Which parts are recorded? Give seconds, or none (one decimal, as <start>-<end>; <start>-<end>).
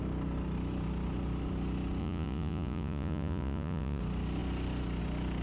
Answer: 0.0-2.0; 4.0-5.4